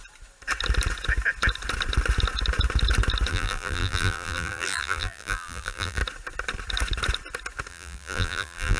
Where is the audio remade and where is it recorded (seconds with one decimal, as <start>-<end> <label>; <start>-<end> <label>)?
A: 0.0-3.3 recorded; 3.3-6.0 remade; 6.0-7.7 recorded; 7.7-8.8 remade